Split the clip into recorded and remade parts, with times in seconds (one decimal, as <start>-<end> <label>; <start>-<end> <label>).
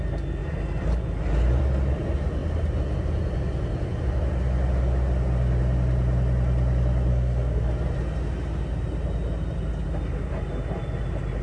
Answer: 0.0-7.1 recorded; 7.1-7.7 remade; 7.7-11.4 recorded